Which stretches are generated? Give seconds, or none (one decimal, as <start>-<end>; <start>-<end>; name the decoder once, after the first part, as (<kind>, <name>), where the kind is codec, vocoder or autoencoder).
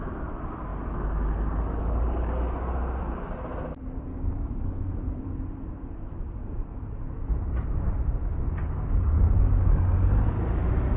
4.1-4.8 (codec, DAC); 8.2-9.6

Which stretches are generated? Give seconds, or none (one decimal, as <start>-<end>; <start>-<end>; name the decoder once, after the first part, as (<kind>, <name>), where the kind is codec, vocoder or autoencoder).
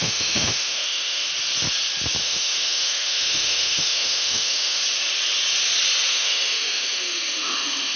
0.0-1.3 (autoencoder, DAC-VAE); 2.2-4.8; 6.1-8.0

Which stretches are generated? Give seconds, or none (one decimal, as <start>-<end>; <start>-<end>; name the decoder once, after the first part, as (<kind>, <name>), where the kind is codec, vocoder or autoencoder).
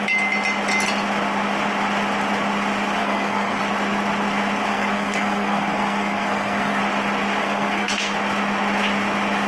3.0-3.6 (codec, SNAC); 4.7-6.8; 7.4-8.1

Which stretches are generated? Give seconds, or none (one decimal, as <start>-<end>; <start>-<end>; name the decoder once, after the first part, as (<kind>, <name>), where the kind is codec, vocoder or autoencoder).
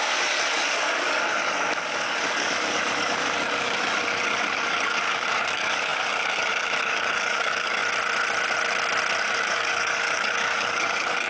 0.0-7.8 (codec, DAC); 9.2-11.3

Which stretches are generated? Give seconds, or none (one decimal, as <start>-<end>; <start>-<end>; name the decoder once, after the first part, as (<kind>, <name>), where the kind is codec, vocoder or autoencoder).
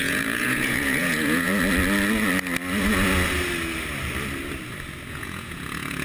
0.0-1.5 (vocoder, Vocos); 5.1-6.0